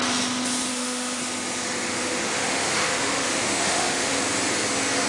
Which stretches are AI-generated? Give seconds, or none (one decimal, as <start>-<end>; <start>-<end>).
0.7-1.2; 1.9-4.2